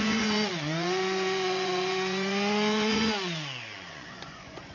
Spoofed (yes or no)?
yes